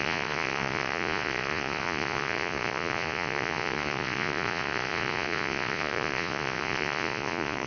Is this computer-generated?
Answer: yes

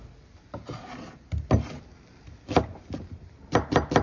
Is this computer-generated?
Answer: no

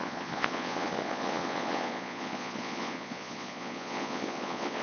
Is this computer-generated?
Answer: yes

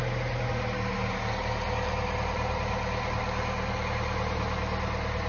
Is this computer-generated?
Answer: no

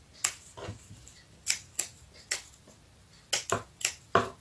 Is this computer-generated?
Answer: no